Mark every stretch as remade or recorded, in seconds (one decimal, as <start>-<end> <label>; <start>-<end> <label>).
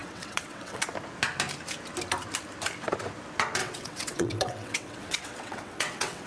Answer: 0.0-0.8 remade; 0.8-3.6 recorded; 3.6-6.3 remade